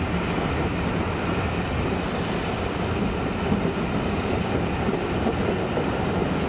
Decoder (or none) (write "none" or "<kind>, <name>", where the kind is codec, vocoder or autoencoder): none